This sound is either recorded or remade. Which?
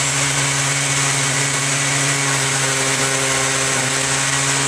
recorded